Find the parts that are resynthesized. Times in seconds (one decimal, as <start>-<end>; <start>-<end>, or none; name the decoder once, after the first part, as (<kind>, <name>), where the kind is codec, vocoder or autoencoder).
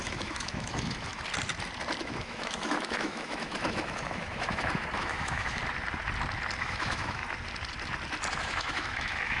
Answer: 0.0-1.1 (autoencoder, DAC-VAE); 2.0-5.6; 6.6-7.2; 8.4-9.4